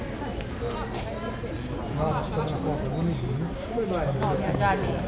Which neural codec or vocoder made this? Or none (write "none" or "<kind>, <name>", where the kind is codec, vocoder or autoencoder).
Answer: none